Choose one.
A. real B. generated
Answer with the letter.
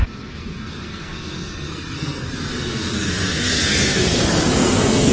B